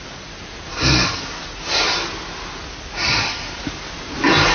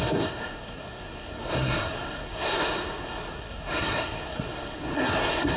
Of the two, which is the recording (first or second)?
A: first